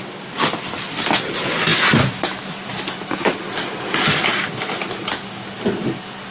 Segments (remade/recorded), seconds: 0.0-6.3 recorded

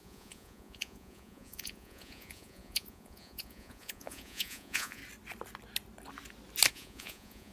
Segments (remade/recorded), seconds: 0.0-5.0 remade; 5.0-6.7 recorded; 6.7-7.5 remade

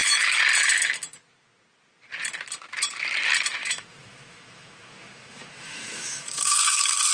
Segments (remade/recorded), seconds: 0.0-3.6 recorded; 3.6-7.1 remade

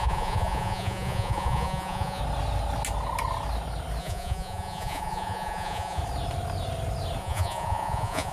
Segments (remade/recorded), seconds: 0.0-2.2 remade; 2.2-4.0 recorded; 4.0-6.0 remade; 6.0-7.2 recorded; 7.2-8.3 remade